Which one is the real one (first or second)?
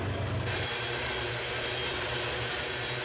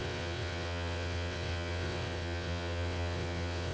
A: first